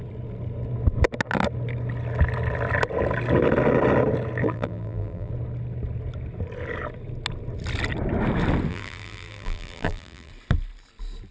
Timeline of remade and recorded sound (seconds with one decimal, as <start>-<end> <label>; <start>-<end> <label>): 0.0-4.4 recorded; 4.4-5.3 remade; 5.3-8.7 recorded; 8.7-10.3 remade; 10.3-11.3 recorded